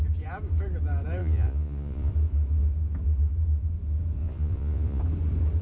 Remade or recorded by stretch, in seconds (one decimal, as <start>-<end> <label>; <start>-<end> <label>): 0.0-1.2 recorded; 1.2-2.1 remade; 2.1-4.2 recorded; 4.2-5.0 remade; 5.0-5.6 recorded